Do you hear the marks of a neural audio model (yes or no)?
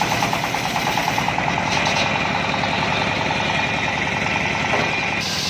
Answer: no